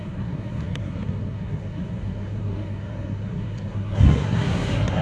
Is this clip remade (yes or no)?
yes